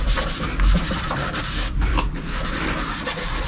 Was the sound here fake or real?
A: fake